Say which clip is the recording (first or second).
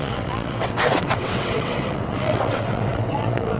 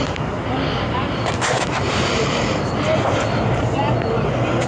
second